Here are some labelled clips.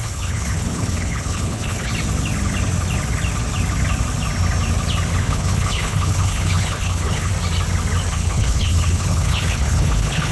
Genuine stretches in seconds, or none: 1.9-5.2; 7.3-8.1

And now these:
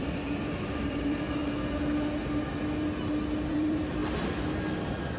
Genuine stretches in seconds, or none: 1.4-3.5; 4.0-5.2

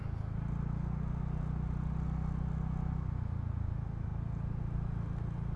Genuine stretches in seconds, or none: 0.0-5.6

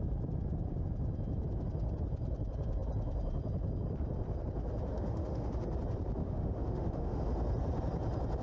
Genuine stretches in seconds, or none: 0.0-4.9; 5.5-6.2; 7.2-8.4

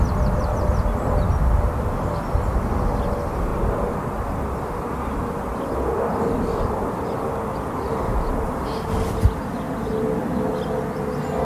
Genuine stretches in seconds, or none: 0.0-11.4

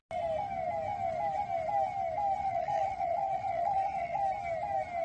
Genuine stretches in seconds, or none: 0.0-2.4; 4.2-5.0